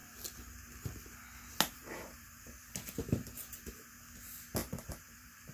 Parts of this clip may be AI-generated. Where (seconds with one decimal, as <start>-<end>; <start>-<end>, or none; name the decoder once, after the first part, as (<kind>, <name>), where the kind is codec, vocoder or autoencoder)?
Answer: 1.8-2.7 (vocoder, BigVGAN v2); 4.6-5.5